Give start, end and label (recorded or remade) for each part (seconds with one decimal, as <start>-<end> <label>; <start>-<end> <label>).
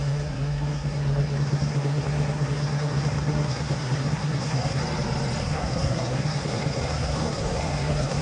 0.0-4.8 remade; 4.8-5.4 recorded; 5.4-8.2 remade